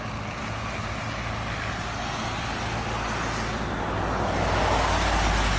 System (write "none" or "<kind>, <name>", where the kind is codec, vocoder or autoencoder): none